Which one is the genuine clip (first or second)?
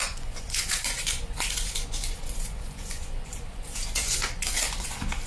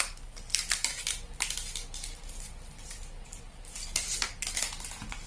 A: second